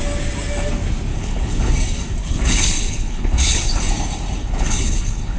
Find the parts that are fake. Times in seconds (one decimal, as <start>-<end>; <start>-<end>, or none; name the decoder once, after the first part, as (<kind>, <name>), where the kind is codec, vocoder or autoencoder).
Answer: 1.1-1.7 (codec, HILCodec); 2.2-3.8; 4.4-5.4